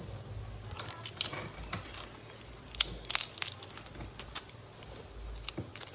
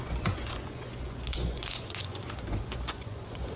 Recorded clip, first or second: first